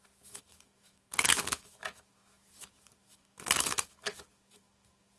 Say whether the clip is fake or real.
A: fake